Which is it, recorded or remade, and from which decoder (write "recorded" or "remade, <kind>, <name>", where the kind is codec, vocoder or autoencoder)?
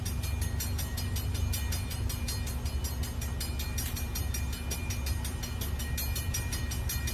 recorded